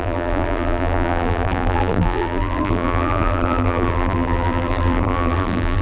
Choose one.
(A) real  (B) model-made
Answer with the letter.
B